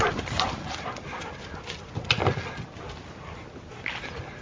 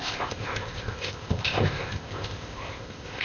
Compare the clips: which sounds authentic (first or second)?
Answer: first